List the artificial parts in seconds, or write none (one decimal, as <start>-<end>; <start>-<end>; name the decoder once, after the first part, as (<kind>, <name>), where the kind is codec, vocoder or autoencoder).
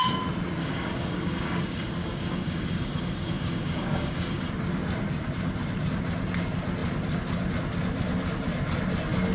0.6-4.5 (codec, DAC)